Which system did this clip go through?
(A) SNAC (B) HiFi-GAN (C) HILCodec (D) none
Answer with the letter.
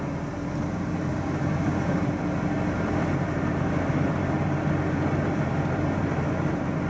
D